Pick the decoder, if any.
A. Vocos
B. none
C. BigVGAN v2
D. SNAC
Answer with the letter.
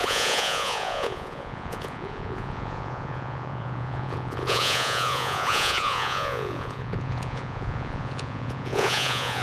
A